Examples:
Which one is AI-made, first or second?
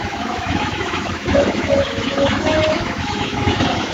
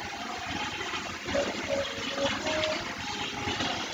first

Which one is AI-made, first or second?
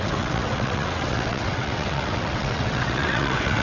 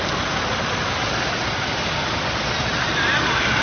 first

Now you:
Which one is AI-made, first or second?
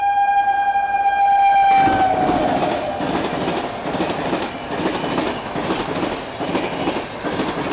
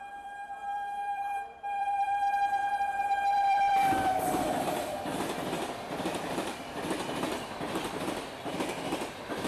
second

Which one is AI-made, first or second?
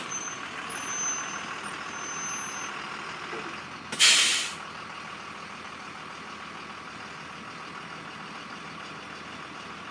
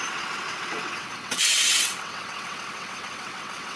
second